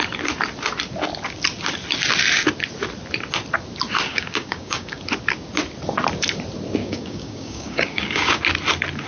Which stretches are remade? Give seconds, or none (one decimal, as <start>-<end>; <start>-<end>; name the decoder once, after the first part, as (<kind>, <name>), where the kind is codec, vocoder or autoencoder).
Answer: 4.1-5.0 (codec, DAC); 6.8-8.4